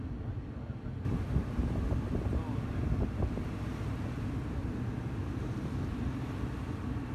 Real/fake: real